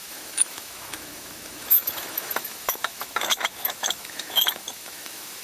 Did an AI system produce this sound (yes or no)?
yes